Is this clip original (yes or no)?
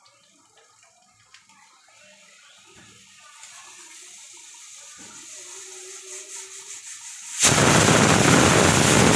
yes